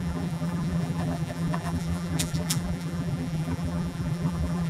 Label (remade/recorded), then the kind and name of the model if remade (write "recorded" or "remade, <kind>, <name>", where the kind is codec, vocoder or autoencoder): remade, vocoder, BigVGAN v2